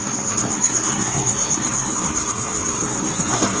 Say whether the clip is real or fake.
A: fake